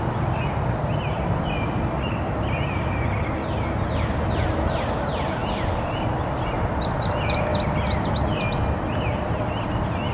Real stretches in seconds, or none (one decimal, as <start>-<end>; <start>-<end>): 0.0-10.1

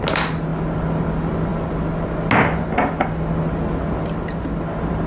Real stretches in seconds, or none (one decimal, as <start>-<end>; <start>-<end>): 0.0-5.1

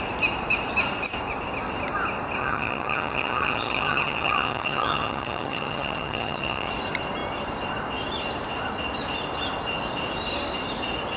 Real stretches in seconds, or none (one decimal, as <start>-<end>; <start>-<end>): 0.0-2.4; 6.7-11.2

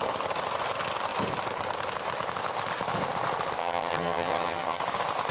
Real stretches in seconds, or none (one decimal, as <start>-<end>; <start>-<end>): 0.0-3.6; 4.8-5.3

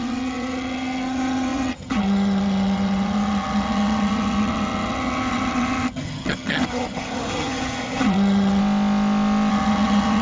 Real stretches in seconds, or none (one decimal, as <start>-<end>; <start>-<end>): 8.6-9.5